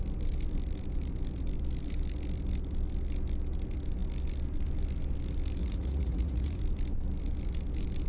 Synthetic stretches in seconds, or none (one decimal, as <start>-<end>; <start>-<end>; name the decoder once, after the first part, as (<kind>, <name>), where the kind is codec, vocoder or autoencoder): 5.6-6.6 (vocoder, Vocos)